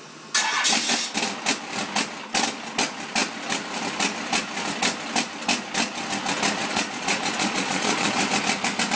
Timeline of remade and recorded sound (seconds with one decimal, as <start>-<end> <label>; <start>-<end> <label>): 0.0-6.6 recorded; 6.6-8.2 remade; 8.2-9.0 recorded